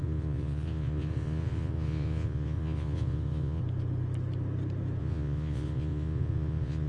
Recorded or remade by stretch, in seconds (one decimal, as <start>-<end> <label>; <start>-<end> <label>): 0.0-3.6 remade; 3.6-5.0 recorded; 5.0-6.9 remade